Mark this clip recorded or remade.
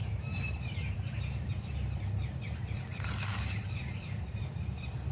remade